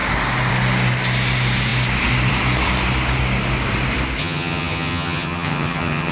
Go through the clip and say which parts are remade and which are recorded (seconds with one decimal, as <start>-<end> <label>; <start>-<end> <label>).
0.0-4.2 recorded; 4.2-6.1 remade